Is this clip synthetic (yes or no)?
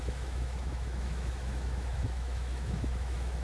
yes